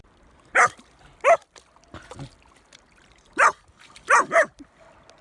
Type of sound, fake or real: real